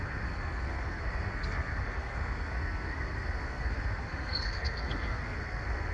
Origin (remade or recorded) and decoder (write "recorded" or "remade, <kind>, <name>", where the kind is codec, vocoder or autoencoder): remade, codec, SNAC